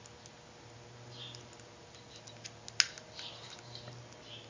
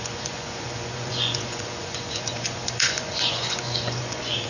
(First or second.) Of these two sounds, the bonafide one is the first